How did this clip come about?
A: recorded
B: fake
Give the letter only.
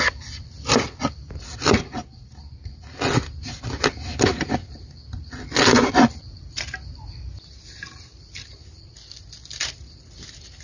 A